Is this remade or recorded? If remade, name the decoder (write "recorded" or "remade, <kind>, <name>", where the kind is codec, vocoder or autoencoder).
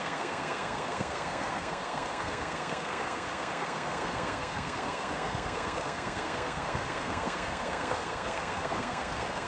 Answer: remade, codec, SNAC